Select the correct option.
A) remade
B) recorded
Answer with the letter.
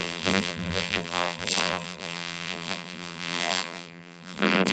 A